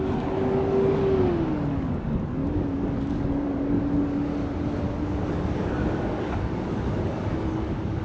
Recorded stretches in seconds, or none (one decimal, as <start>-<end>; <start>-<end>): 4.3-5.0